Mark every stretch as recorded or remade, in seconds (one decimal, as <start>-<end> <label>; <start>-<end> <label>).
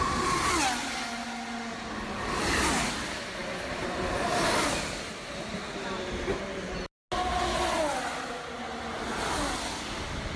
0.0-3.4 recorded; 3.4-3.9 remade; 3.9-10.4 recorded